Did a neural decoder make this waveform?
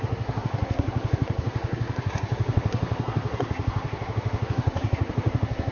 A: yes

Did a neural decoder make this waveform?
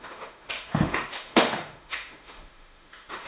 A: yes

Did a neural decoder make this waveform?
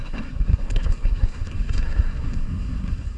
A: yes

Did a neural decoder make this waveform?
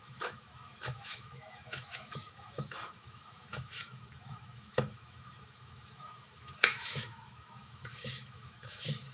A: yes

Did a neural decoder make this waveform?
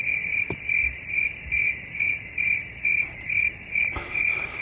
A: no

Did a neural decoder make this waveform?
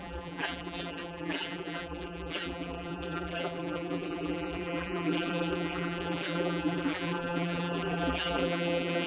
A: yes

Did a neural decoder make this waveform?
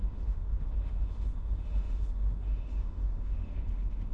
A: yes